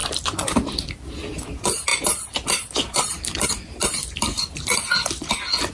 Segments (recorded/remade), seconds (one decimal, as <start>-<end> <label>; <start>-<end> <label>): 0.0-0.9 remade; 0.9-1.9 recorded; 1.9-5.3 remade; 5.3-5.7 recorded